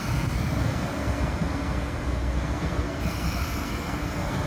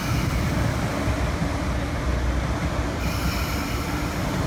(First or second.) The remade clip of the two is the first